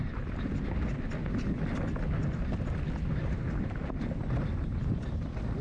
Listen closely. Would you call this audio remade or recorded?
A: recorded